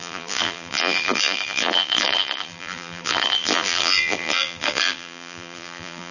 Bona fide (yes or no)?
no